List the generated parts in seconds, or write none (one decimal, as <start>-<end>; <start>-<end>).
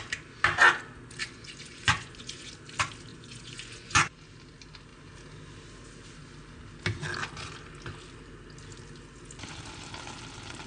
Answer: 1.2-2.5; 3.1-4.2